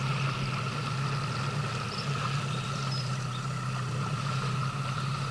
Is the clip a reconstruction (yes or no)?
no